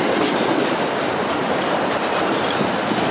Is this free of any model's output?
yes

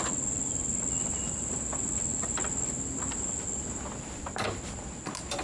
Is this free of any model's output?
yes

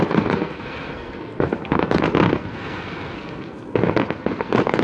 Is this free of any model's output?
no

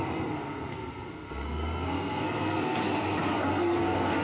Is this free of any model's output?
no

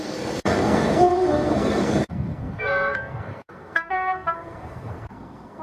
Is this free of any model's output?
no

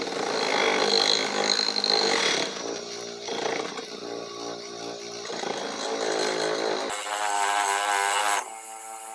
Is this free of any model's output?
yes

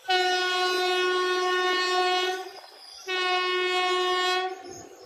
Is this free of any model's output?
yes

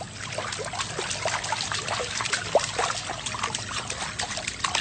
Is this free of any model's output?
yes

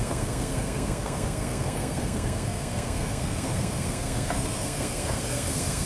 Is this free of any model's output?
no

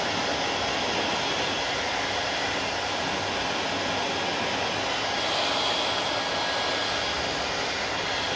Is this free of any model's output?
yes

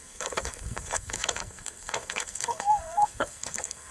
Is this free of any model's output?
no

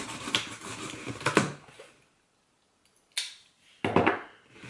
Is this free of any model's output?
yes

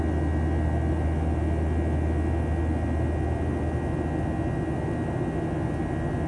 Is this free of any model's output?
yes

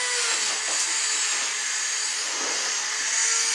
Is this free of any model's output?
yes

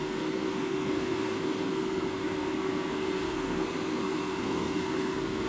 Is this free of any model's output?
no